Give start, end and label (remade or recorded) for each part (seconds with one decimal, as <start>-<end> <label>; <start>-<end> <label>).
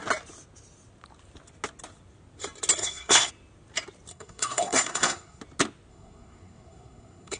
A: 0.0-2.8 recorded; 2.8-3.3 remade; 3.3-4.1 recorded; 4.1-5.4 remade; 5.4-5.9 recorded; 5.9-7.4 remade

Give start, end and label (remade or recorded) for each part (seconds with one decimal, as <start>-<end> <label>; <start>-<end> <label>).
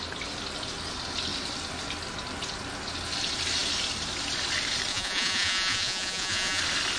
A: 0.0-4.9 recorded; 4.9-6.6 remade; 6.6-7.0 recorded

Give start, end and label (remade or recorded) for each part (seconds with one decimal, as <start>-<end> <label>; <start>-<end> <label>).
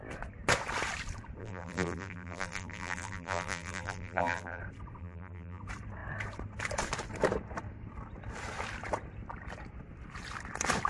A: 0.0-1.4 recorded; 1.4-4.6 remade; 4.6-5.0 recorded; 5.0-5.6 remade; 5.6-10.9 recorded